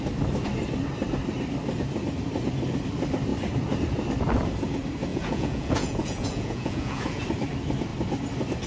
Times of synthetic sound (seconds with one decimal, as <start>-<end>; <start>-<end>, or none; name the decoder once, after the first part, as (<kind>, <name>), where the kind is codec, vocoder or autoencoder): 5.1-7.2 (vocoder, Vocos)